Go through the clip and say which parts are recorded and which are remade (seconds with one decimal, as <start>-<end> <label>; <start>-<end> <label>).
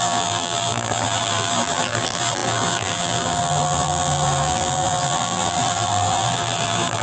0.0-7.0 remade